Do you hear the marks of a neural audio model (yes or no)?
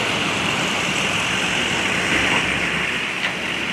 yes